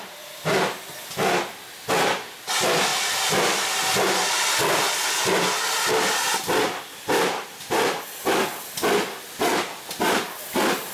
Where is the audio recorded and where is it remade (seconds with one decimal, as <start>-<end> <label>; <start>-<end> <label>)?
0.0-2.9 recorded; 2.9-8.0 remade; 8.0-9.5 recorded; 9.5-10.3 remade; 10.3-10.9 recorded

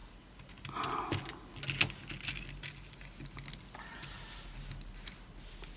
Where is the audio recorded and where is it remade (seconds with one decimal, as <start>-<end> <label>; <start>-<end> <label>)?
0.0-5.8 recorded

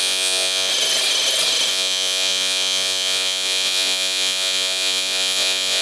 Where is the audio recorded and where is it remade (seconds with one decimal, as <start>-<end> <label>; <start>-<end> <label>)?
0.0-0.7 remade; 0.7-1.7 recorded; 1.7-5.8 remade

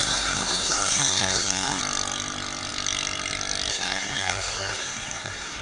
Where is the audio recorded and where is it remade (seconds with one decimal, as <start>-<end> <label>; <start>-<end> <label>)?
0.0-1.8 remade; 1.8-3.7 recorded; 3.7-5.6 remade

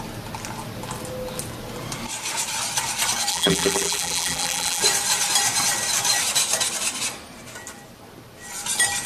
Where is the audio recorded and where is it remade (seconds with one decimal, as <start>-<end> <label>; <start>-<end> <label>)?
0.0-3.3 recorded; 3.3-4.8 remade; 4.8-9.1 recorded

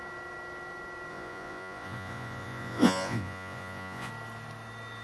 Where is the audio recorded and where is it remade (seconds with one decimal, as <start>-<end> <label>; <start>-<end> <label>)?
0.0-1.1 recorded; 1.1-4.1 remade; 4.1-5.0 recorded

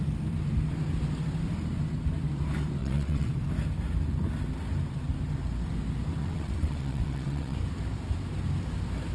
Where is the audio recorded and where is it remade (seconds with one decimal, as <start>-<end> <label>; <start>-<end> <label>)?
0.0-2.8 recorded; 2.8-3.3 remade; 3.3-6.2 recorded; 6.2-7.6 remade; 7.6-9.1 recorded